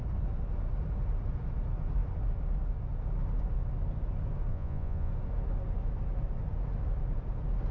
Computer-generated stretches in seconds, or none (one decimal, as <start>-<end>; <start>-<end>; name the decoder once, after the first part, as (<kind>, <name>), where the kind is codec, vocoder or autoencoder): 4.5-5.1 (vocoder, Vocos)